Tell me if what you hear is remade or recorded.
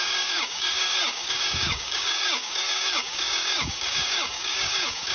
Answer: remade